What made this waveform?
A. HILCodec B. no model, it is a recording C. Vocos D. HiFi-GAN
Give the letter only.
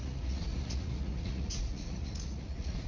C